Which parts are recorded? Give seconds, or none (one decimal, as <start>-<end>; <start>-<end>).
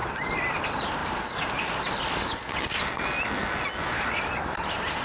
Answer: 0.0-3.8